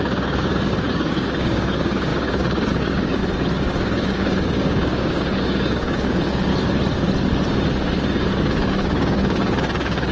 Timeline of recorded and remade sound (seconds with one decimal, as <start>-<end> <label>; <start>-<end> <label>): 0.0-3.2 remade; 3.2-3.7 recorded; 3.7-6.5 remade; 6.5-8.4 recorded; 8.4-10.1 remade